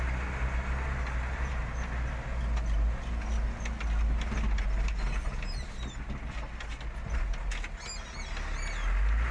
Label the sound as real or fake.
real